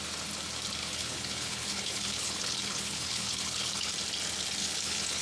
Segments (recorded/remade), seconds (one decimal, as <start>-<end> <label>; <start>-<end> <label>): 0.0-0.8 recorded; 0.8-3.9 remade; 3.9-4.6 recorded; 4.6-5.2 remade